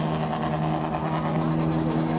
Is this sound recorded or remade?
recorded